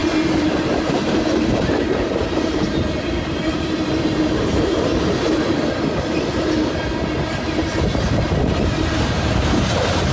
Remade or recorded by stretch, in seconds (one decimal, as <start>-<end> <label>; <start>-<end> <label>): 0.0-0.6 recorded; 0.6-4.9 remade; 4.9-7.0 recorded; 7.0-10.1 remade